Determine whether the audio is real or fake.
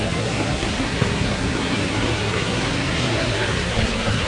fake